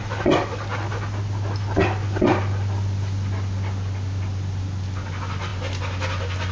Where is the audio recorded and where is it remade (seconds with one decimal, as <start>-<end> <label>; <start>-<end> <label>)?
0.0-6.5 recorded